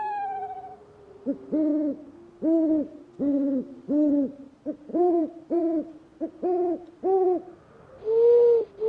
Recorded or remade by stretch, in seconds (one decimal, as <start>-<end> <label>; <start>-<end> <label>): 0.0-4.9 recorded; 4.9-5.6 remade; 5.6-8.9 recorded